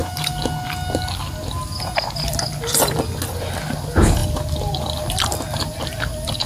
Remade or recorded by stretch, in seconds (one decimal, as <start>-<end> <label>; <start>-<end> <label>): 0.0-6.5 recorded